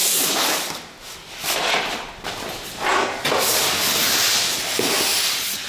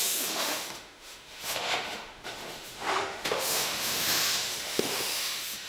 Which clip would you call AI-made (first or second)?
second